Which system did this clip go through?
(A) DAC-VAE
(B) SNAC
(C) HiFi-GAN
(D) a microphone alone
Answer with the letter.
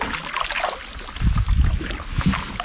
D